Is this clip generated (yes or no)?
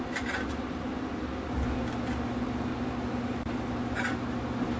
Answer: no